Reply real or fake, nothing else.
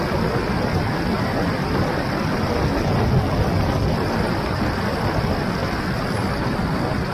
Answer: real